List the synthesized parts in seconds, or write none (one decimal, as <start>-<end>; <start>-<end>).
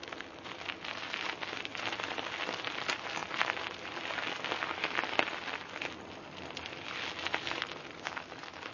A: none